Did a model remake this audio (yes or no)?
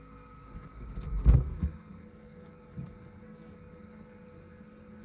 yes